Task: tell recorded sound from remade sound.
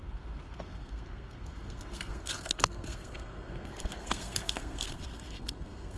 remade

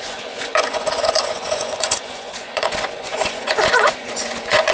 remade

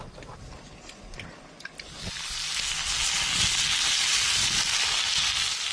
recorded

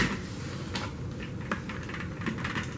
recorded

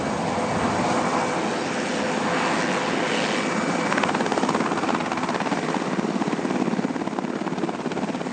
recorded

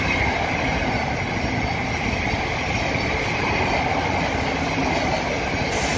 recorded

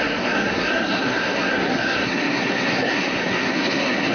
remade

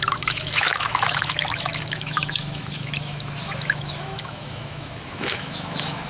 remade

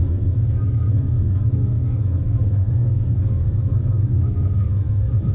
remade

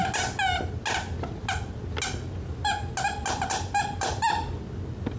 recorded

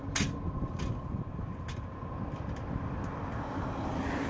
recorded